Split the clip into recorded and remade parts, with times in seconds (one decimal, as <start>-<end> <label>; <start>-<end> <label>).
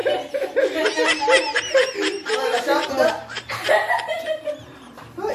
0.0-0.6 remade; 0.6-1.8 recorded; 1.8-5.3 remade